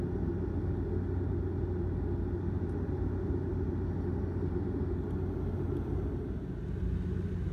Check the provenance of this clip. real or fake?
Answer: real